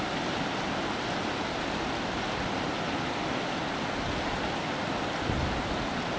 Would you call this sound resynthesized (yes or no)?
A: no